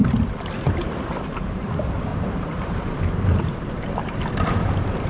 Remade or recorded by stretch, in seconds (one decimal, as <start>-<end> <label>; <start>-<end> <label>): 0.0-1.7 remade; 1.7-2.1 recorded; 2.1-3.1 remade; 3.1-5.1 recorded

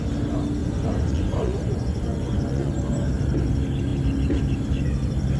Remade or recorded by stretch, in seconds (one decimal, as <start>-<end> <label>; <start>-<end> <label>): 0.0-0.6 recorded; 0.6-2.7 remade; 2.7-5.4 recorded

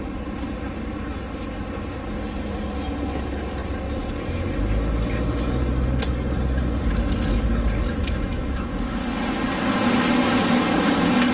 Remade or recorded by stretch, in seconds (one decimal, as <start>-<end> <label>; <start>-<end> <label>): 0.0-8.0 recorded; 8.0-8.7 remade; 8.7-11.3 recorded

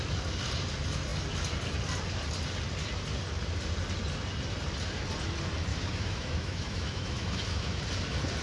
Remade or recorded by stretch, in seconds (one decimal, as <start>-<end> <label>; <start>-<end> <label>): 0.0-5.7 recorded; 5.7-7.8 remade; 7.8-8.4 recorded

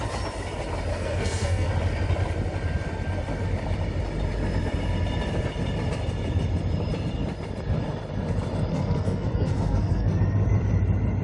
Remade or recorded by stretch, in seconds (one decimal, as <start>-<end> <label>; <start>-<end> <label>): 0.0-0.9 recorded; 0.9-1.7 remade; 1.7-8.7 recorded; 8.7-10.2 remade; 10.2-11.2 recorded